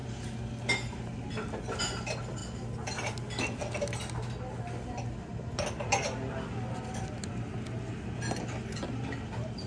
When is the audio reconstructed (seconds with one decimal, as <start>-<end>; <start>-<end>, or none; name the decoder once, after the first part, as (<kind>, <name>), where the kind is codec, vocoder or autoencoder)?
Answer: none